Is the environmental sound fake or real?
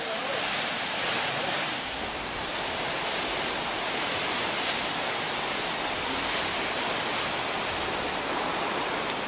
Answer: real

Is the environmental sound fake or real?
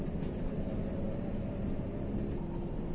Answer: real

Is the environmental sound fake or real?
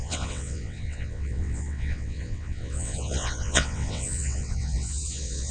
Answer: fake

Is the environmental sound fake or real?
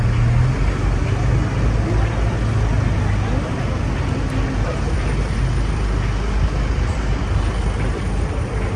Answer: real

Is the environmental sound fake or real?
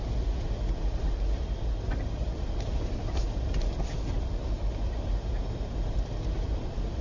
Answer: fake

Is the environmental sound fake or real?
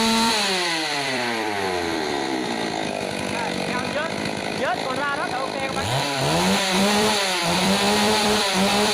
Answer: fake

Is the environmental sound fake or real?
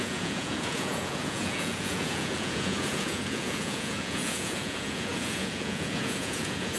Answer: fake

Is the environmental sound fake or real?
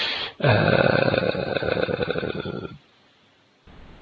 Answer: fake